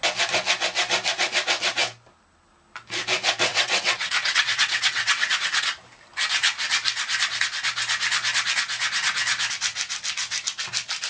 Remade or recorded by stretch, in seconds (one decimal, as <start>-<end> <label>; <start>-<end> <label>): 0.0-3.5 recorded; 3.5-5.8 remade; 5.8-11.1 recorded